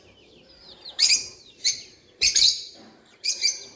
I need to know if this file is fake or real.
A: fake